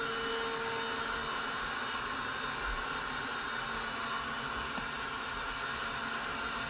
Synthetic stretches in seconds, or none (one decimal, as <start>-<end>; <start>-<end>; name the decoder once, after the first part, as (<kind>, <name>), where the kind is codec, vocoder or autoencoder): none